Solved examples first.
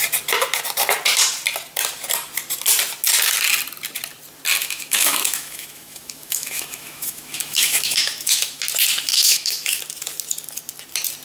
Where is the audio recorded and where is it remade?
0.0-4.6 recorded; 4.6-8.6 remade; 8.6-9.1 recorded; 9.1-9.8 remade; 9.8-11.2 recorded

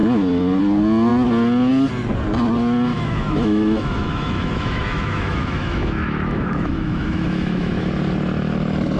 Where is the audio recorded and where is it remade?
0.0-2.9 recorded; 2.9-7.9 remade; 7.9-9.0 recorded

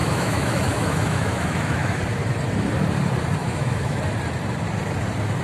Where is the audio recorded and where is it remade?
0.0-2.0 remade; 2.0-3.4 recorded; 3.4-4.0 remade; 4.0-5.4 recorded

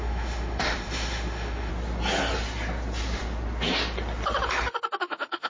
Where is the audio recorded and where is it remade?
0.0-1.7 remade; 1.7-5.0 recorded; 5.0-5.5 remade

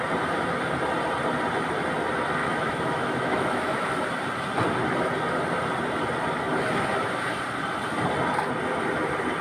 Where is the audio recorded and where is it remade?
0.0-2.4 recorded; 2.4-3.9 remade; 3.9-9.4 recorded

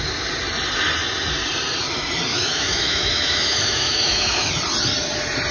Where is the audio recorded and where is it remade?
0.0-2.3 recorded; 2.3-4.5 remade; 4.5-5.5 recorded

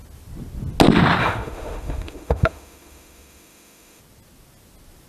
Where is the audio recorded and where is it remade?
0.0-1.2 recorded; 1.2-4.0 remade; 4.0-5.1 recorded